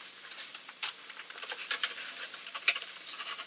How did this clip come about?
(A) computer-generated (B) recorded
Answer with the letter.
A